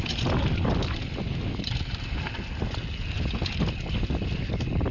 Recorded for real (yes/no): yes